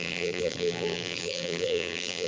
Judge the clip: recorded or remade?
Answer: remade